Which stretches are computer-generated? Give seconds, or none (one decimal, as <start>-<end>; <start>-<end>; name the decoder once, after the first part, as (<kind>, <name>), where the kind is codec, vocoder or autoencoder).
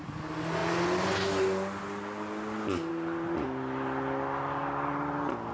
none